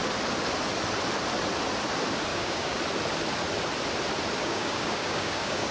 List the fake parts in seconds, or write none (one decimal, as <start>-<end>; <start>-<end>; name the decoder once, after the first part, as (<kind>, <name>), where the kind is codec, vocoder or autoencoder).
2.3-2.8 (codec, DAC); 4.4-5.7